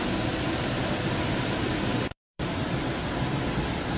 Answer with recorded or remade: remade